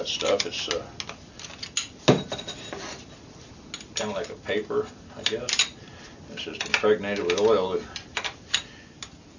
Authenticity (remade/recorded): recorded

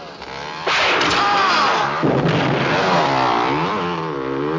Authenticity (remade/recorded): recorded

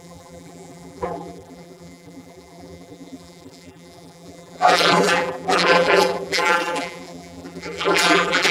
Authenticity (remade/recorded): remade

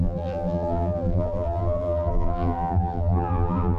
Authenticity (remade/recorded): remade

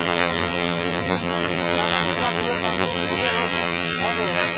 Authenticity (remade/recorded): remade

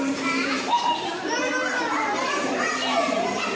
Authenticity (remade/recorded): remade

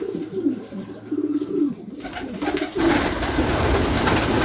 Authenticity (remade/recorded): remade